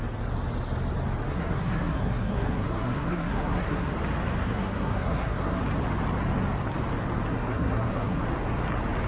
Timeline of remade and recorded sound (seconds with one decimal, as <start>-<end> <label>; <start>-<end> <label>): 0.0-1.3 recorded; 1.3-3.9 remade; 3.9-4.4 recorded; 4.4-5.6 remade; 5.6-7.3 recorded; 7.3-8.2 remade; 8.2-9.1 recorded